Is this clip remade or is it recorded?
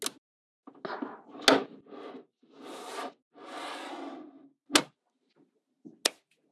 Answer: recorded